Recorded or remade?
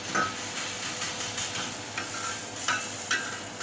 recorded